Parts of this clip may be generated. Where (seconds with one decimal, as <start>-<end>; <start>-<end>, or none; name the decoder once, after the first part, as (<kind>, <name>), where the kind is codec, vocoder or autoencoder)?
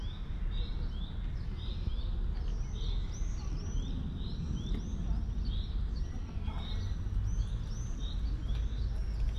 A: 6.2-6.7 (codec, SNAC)